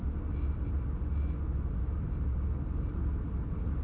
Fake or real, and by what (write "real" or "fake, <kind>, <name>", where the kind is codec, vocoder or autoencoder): real